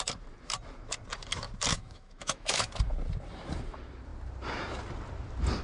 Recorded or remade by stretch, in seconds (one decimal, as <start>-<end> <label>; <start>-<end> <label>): 0.0-1.7 recorded; 1.7-2.7 remade; 2.7-5.6 recorded